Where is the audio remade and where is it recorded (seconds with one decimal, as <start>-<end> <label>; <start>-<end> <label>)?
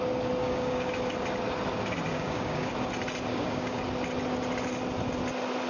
0.0-0.4 recorded; 0.4-0.9 remade; 0.9-2.1 recorded; 2.1-2.7 remade; 2.7-3.3 recorded; 3.3-3.9 remade; 3.9-5.7 recorded